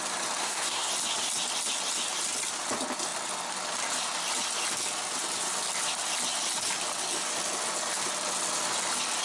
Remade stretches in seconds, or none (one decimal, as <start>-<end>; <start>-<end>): 0.4-0.9